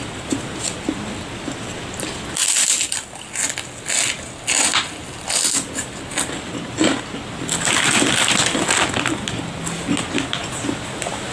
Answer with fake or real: real